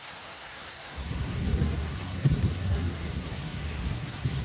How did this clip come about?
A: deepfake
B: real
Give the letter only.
A